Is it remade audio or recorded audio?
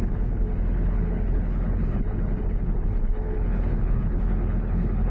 remade